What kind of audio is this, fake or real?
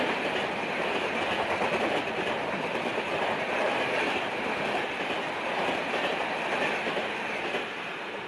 fake